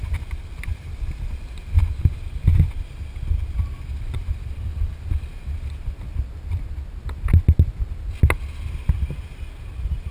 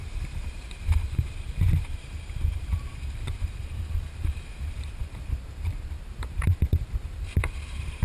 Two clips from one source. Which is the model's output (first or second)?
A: second